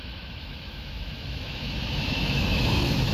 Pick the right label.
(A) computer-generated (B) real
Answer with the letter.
A